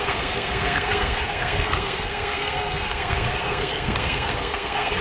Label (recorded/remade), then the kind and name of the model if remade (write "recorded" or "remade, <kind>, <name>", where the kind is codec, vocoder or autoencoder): remade, codec, SNAC